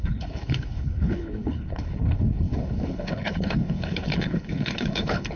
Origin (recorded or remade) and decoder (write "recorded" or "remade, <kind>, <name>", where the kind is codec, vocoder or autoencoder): remade, codec, HILCodec